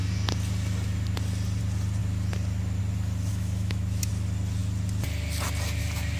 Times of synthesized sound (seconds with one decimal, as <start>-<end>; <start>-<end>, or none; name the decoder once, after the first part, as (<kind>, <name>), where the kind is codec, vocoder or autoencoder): 3.3-4.1 (autoencoder, DAC-VAE)